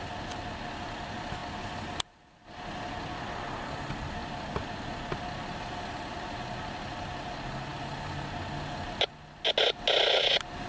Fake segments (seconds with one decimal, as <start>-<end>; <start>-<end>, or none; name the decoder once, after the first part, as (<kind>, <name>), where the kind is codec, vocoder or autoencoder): none